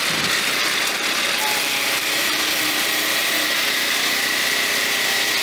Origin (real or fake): fake